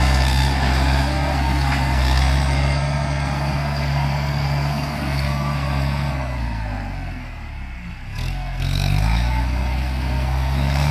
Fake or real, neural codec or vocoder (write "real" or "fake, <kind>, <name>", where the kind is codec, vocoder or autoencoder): fake, codec, SNAC